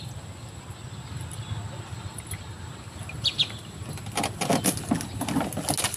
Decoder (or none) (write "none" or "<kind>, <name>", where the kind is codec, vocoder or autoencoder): none